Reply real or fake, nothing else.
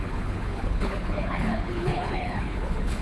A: fake